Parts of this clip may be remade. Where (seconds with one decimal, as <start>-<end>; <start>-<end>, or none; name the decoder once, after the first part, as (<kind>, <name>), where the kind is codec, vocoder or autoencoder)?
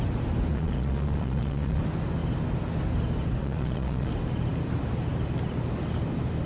0.5-1.8 (vocoder, Vocos); 3.4-4.1